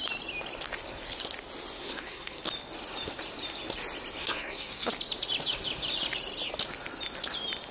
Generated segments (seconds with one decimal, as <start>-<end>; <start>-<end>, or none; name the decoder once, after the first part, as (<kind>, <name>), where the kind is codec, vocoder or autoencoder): 1.8-2.4 (codec, SNAC); 4.2-4.9